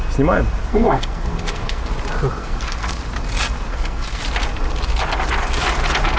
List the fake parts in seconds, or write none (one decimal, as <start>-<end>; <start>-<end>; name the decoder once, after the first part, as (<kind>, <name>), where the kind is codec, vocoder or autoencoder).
0.7-1.9 (codec, SNAC); 2.4-3.0; 3.7-4.2